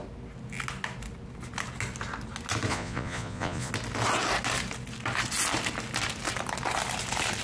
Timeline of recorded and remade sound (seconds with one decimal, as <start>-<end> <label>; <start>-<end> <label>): 0.0-2.7 recorded; 2.7-3.7 remade; 3.7-7.4 recorded